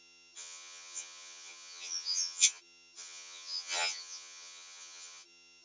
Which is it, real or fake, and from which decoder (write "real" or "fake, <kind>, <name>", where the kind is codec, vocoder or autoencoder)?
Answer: fake, vocoder, HiFi-GAN